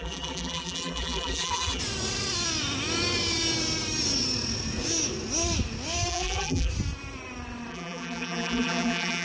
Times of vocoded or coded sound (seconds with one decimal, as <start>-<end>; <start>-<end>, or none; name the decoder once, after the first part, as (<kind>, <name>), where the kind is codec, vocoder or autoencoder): 0.0-1.8 (vocoder, BigVGAN v2); 6.1-6.7; 7.7-9.2